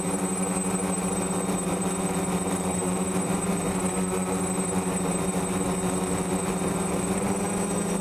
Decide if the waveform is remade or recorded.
remade